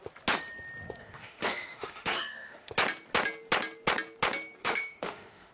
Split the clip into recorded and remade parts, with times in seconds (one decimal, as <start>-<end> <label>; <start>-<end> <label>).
0.0-1.0 recorded; 1.0-2.7 remade; 2.7-4.6 recorded; 4.6-5.5 remade